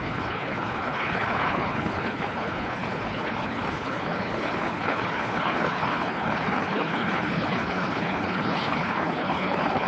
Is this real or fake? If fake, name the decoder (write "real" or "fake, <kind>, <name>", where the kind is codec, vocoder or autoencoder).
fake, codec, HILCodec